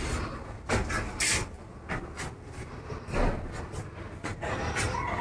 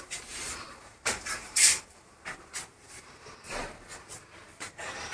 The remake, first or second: second